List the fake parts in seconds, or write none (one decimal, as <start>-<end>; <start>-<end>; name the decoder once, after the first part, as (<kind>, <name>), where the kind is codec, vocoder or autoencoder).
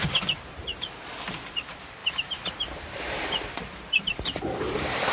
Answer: 0.0-0.7 (vocoder, BigVGAN v2); 1.5-5.1